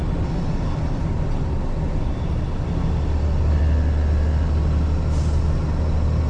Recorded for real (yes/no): yes